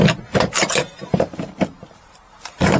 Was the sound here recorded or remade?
remade